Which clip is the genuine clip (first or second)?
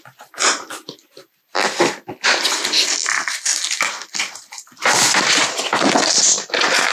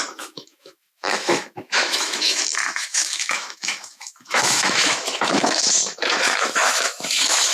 first